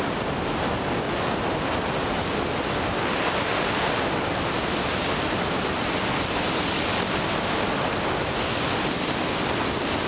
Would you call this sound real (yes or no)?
yes